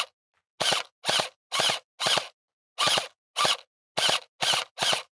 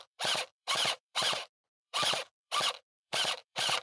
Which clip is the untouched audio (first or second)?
first